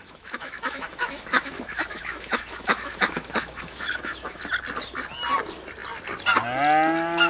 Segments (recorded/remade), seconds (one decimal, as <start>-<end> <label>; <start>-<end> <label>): 0.0-4.4 remade; 4.4-7.3 recorded